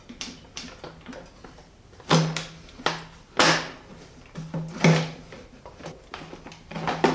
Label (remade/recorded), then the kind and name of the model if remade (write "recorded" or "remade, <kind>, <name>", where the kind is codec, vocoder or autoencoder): recorded